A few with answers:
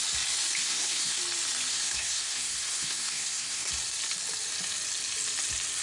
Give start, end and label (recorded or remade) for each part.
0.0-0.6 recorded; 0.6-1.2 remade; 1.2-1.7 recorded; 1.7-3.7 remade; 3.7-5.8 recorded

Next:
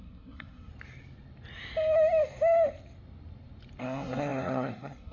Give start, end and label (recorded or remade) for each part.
0.0-0.7 remade; 0.7-3.8 recorded; 3.8-5.1 remade

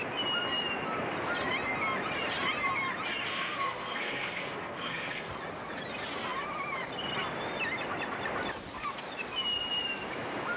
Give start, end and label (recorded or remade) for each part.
0.0-3.3 recorded; 3.3-5.3 remade; 5.3-10.6 recorded

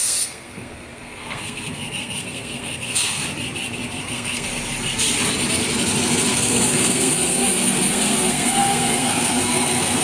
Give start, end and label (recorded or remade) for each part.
0.0-3.2 remade; 3.2-4.0 recorded; 4.0-4.5 remade; 4.5-6.3 recorded; 6.3-10.0 remade

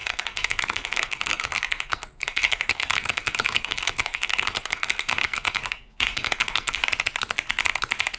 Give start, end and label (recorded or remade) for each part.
0.0-6.8 remade; 6.8-8.2 recorded

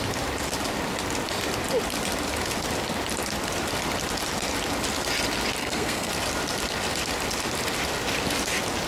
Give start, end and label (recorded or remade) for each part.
0.0-5.6 recorded; 5.6-6.1 remade; 6.1-8.9 recorded

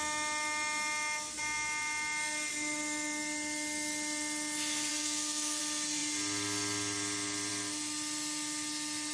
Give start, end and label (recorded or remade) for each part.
0.0-4.9 recorded; 4.9-5.6 remade; 5.6-9.1 recorded